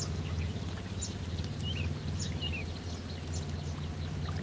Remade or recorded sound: recorded